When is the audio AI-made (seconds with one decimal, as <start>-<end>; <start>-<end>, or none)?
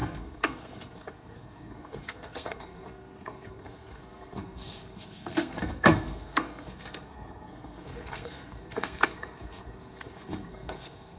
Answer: 0.0-11.2